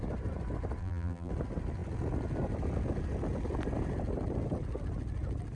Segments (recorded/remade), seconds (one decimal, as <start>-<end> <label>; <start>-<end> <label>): 0.0-0.8 recorded; 0.8-1.3 remade; 1.3-5.6 recorded